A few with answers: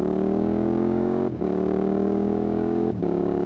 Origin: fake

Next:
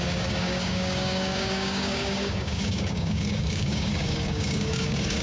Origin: fake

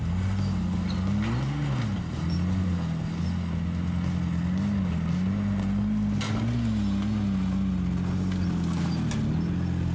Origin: real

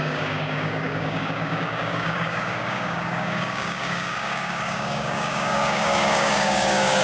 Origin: fake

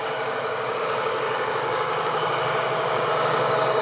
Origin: fake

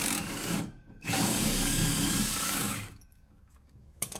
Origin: fake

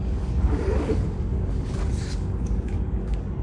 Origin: fake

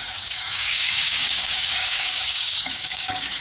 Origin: fake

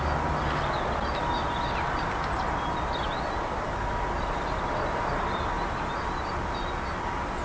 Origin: real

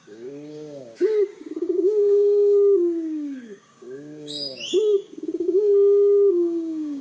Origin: fake